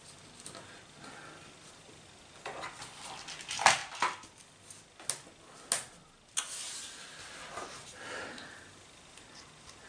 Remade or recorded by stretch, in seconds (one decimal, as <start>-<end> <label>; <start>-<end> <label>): 0.0-9.9 recorded